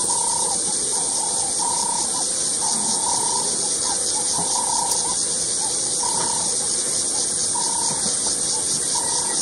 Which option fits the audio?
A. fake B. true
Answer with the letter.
B